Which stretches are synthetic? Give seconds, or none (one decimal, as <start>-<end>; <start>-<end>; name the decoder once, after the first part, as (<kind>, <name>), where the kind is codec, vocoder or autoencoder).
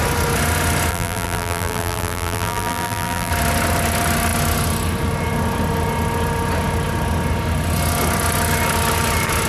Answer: 0.9-3.3 (vocoder, BigVGAN v2)